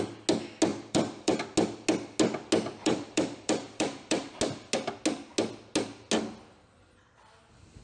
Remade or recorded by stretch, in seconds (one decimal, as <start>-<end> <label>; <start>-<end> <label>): 0.0-0.7 recorded; 0.7-1.4 remade; 1.4-2.8 recorded; 2.8-4.3 remade; 4.3-7.8 recorded